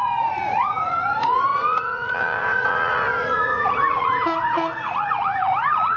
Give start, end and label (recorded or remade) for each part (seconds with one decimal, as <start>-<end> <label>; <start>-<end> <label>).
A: 0.0-6.0 remade